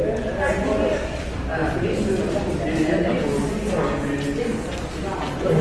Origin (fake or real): real